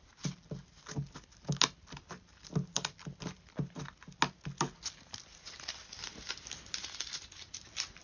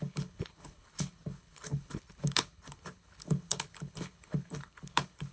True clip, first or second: first